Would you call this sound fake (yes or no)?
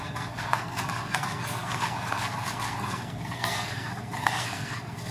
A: yes